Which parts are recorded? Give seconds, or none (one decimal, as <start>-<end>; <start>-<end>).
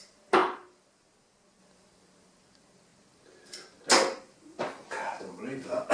0.0-5.9